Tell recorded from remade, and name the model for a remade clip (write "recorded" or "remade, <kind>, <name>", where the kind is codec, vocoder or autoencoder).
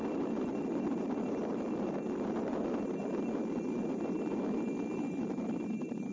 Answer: recorded